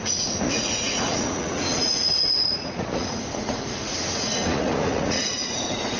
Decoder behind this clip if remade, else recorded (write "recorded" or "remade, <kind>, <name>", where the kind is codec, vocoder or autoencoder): remade, vocoder, Vocos